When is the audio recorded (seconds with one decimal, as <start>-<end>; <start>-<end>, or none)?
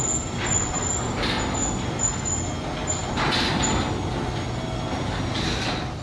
0.0-6.0